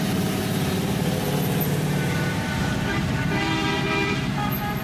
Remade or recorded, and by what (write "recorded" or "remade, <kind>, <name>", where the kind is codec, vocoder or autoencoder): remade, vocoder, BigVGAN v2